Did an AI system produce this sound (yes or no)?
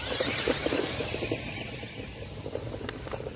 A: yes